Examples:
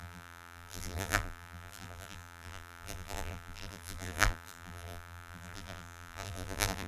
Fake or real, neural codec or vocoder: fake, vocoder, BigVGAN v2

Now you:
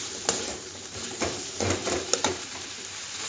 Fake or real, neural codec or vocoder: fake, vocoder, BigVGAN v2